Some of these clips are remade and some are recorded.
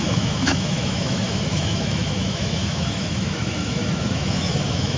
remade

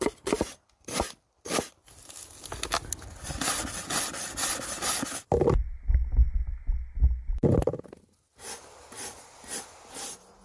recorded